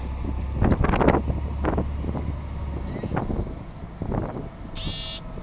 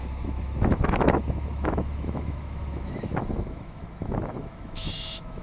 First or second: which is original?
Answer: first